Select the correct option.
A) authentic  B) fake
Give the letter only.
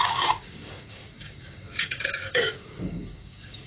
B